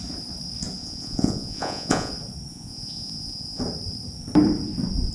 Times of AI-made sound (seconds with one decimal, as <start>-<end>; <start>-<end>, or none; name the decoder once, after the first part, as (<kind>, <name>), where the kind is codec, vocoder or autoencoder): 0.8-2.1 (vocoder, Vocos); 2.5-3.6